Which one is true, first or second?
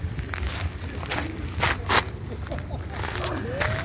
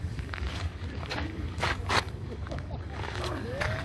first